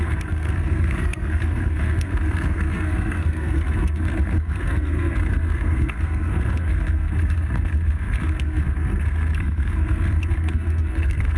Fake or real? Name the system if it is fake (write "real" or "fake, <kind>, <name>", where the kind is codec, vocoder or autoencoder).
fake, codec, SNAC